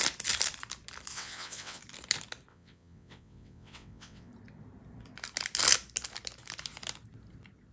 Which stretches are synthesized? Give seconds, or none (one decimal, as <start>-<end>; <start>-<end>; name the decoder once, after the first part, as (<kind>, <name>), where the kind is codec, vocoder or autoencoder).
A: 1.1-1.8 (vocoder, WaveNeXt); 2.5-4.3

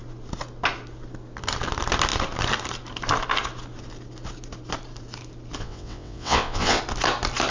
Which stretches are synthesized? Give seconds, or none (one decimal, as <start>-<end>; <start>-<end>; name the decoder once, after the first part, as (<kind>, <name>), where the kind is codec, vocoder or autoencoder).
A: 5.6-6.8 (vocoder, WaveNeXt)